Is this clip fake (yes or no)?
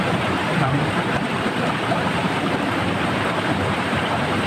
yes